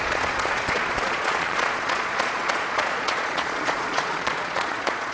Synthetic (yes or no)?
yes